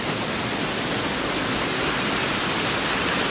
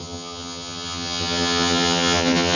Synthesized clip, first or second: second